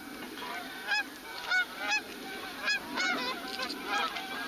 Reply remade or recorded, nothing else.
recorded